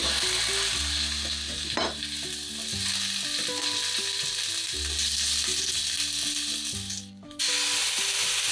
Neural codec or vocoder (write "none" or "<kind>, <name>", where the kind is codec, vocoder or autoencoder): none